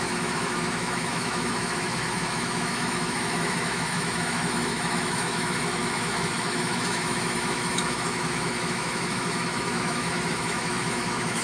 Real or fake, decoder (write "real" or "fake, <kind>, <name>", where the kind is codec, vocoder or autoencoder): fake, autoencoder, DAC-VAE